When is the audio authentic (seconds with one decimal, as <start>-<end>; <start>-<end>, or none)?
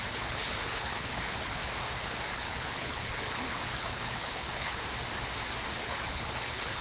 1.6-2.3; 4.8-5.8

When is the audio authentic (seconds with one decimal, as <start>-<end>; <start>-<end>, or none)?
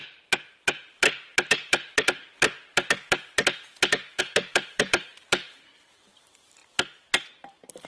0.0-4.2; 5.1-5.9; 6.6-7.3